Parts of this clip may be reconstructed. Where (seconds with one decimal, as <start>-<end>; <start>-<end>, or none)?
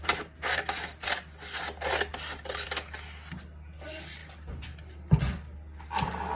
2.1-3.4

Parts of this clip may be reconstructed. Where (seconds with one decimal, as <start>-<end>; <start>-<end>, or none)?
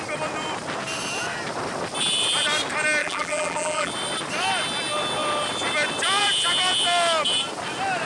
3.0-3.9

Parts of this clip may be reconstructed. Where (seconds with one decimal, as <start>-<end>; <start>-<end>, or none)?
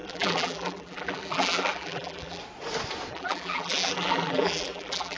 0.0-2.4; 3.1-5.2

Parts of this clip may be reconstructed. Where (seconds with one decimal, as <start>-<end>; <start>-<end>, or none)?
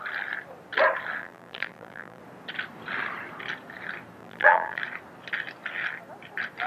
1.2-2.2; 4.2-4.8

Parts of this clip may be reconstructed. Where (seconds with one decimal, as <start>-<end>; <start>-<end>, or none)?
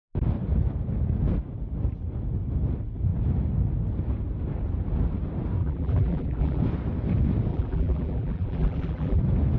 5.6-6.6; 7.5-9.2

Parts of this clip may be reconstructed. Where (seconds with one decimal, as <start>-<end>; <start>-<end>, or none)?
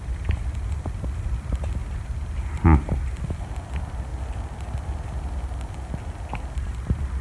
none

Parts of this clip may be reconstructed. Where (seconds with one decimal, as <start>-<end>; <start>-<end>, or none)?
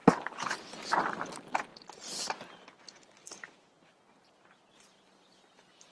none